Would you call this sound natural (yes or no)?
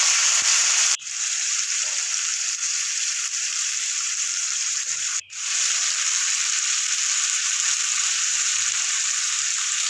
no